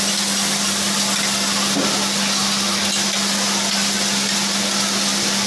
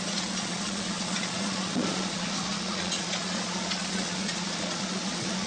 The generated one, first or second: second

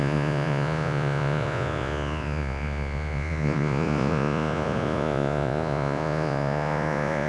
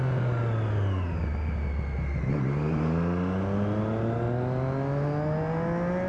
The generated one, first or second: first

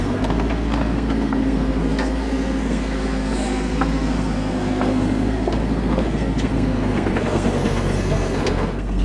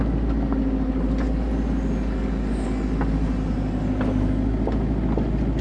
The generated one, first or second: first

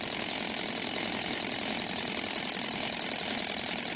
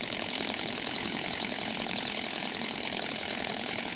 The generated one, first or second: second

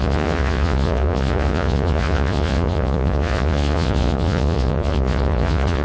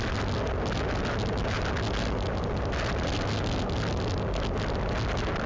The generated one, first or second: first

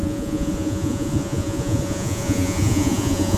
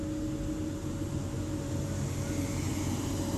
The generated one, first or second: first